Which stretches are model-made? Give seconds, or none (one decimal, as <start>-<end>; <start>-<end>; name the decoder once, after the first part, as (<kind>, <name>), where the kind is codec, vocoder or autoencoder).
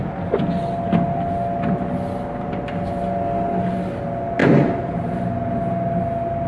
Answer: none